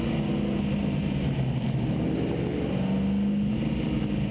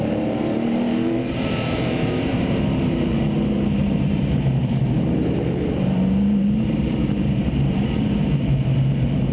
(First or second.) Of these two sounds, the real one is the first